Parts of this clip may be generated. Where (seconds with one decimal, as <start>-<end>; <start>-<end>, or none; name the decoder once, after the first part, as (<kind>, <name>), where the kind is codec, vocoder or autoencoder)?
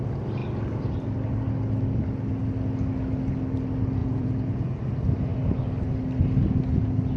4.0-4.8 (vocoder, Vocos)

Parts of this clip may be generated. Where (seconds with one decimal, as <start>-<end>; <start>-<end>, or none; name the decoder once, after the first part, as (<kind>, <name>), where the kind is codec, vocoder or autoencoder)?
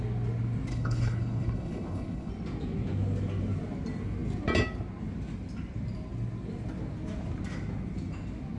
0.7-2.3 (codec, HILCodec)